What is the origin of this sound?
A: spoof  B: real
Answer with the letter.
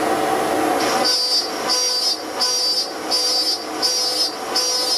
B